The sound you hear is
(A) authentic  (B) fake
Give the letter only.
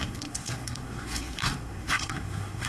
B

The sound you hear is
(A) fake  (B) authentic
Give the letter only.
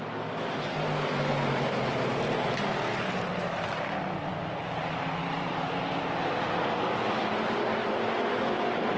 B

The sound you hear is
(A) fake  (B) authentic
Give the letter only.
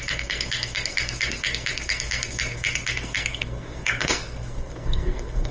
A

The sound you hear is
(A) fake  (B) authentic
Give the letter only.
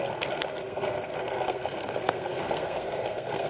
A